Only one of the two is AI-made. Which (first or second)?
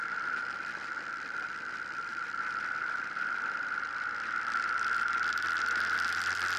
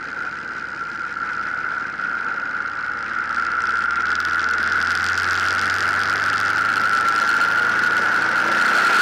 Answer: first